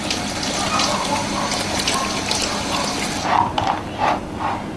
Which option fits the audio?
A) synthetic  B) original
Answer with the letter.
B